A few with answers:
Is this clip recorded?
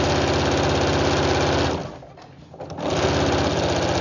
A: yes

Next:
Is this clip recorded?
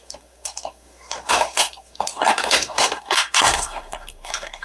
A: no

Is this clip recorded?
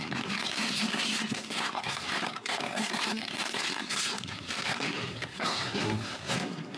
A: no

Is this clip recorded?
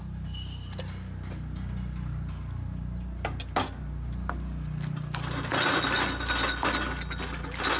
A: yes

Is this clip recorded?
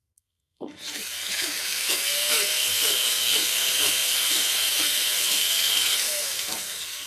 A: no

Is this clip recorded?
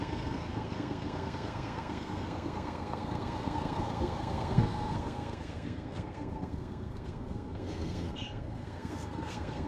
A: no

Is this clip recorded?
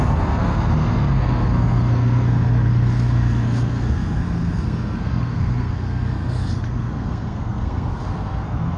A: no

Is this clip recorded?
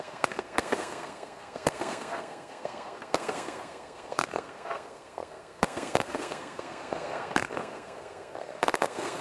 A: no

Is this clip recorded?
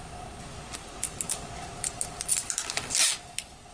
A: yes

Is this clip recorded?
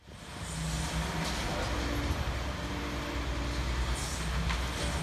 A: yes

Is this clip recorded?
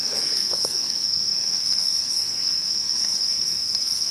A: no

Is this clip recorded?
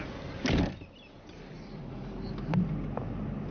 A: yes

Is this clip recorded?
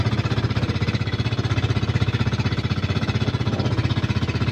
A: yes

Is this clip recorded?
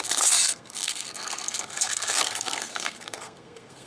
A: no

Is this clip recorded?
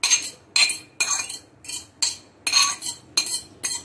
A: yes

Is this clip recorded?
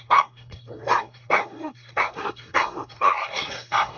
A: no